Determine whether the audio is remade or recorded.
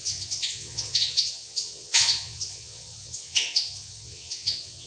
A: remade